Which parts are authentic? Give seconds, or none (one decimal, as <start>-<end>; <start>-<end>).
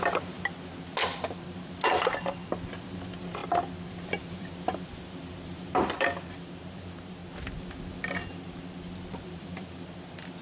3.4-3.9; 7.2-8.9